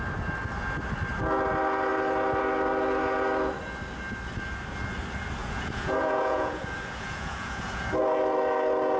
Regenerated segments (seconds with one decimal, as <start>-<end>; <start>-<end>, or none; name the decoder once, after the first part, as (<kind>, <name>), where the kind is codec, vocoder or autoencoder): 5.4-8.0 (vocoder, Vocos)